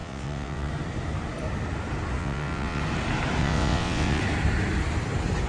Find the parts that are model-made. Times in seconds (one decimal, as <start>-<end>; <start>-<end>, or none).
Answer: 0.0-0.7; 2.2-2.8; 3.4-4.2